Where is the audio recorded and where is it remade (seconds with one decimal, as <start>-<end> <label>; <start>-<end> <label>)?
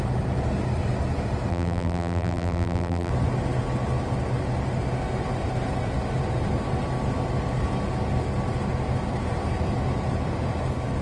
0.0-1.5 recorded; 1.5-3.1 remade; 3.1-11.0 recorded